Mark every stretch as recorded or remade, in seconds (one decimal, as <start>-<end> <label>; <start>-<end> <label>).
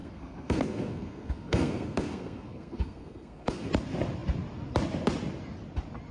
0.0-3.7 remade; 3.7-6.1 recorded